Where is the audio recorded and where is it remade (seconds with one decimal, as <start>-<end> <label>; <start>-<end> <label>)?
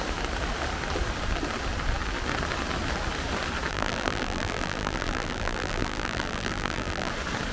0.0-3.7 recorded; 3.7-7.1 remade; 7.1-7.5 recorded